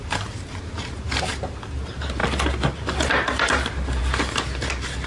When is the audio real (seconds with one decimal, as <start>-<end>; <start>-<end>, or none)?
2.2-2.7